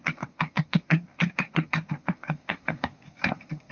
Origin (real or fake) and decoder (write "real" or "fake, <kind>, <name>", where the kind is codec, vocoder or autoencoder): fake, codec, SNAC